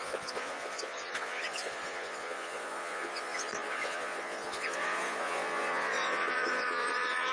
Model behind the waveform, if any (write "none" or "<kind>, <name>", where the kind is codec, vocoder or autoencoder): vocoder, Vocos